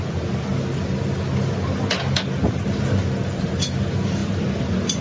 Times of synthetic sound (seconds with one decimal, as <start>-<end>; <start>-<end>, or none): none